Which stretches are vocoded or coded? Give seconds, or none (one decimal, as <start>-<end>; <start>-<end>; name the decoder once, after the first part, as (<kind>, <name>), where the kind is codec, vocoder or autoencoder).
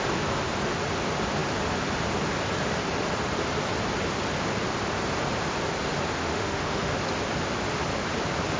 6.2-6.9 (autoencoder, DAC-VAE)